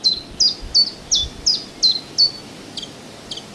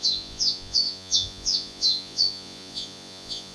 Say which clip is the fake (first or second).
second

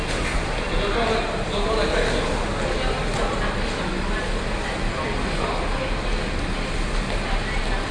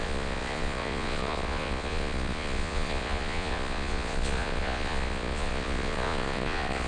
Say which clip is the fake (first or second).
second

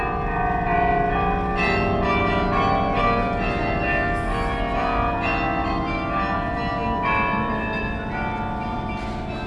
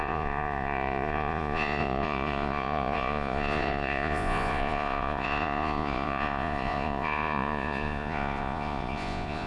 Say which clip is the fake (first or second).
second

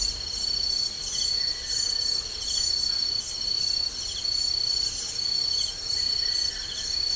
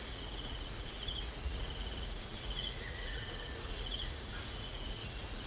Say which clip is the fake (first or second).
second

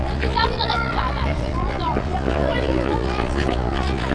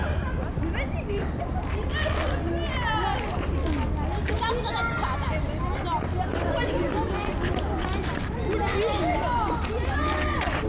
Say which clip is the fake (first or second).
first